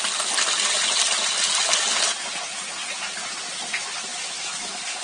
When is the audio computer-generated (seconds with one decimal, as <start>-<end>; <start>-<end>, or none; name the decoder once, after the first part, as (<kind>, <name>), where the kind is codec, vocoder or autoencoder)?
4.1-5.0 (autoencoder, DAC-VAE)